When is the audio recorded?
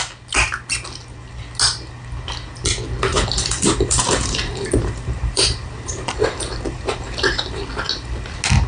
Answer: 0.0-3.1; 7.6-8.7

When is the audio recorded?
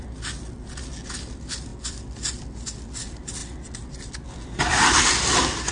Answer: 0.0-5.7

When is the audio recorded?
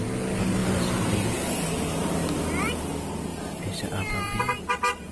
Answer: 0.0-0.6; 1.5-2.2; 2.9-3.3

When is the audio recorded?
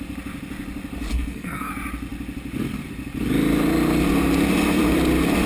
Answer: 0.0-1.1; 1.7-5.5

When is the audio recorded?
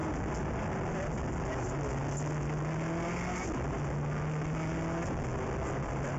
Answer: 0.0-6.2